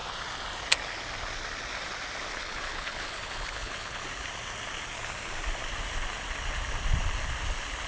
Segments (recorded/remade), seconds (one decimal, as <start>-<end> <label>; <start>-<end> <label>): 0.0-2.3 recorded; 2.3-4.0 remade; 4.0-7.9 recorded